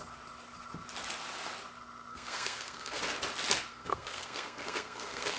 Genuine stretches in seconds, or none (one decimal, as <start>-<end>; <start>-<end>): 0.0-2.1; 3.0-3.7

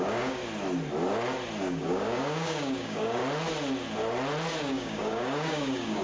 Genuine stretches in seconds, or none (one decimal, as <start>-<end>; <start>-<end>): 0.4-1.6; 3.2-4.6